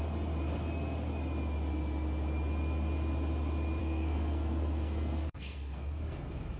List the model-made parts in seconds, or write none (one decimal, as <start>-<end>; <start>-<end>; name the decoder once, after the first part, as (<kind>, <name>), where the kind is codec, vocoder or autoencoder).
3.8-6.6 (codec, SNAC)